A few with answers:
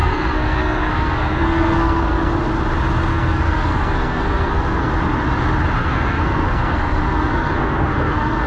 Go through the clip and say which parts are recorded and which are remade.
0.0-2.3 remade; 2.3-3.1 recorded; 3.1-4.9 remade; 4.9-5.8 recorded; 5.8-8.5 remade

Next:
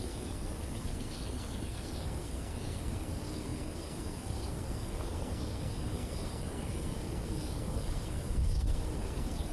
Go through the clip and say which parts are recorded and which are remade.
0.0-9.5 remade

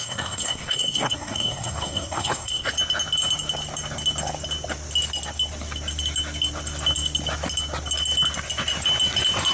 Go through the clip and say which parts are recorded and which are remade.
0.0-2.7 remade; 2.7-9.5 recorded

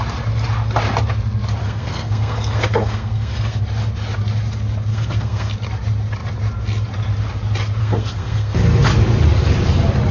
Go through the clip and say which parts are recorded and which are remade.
0.0-1.6 recorded; 1.6-3.6 remade; 3.6-4.9 recorded; 4.9-5.5 remade; 5.5-7.8 recorded; 7.8-8.6 remade; 8.6-10.1 recorded